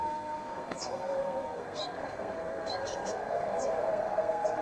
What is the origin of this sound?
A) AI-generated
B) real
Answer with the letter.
A